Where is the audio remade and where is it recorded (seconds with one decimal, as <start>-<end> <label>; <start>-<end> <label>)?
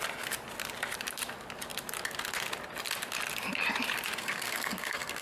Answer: 0.0-4.2 recorded; 4.2-5.2 remade